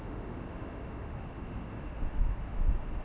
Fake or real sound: fake